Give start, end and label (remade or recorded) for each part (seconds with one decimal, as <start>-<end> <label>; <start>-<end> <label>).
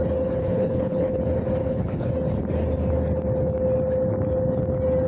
0.0-0.4 recorded; 0.4-1.2 remade; 1.2-1.6 recorded; 1.6-2.1 remade; 2.1-5.1 recorded